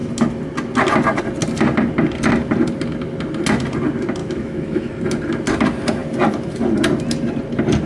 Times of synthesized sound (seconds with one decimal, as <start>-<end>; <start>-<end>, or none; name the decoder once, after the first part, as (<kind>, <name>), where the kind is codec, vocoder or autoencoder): 4.2-4.9 (autoencoder, DAC-VAE)